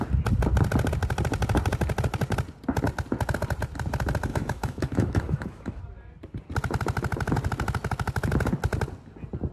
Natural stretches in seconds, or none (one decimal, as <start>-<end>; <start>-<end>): 0.0-4.3; 5.8-9.5